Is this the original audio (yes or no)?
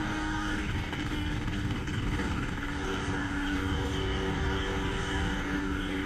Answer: no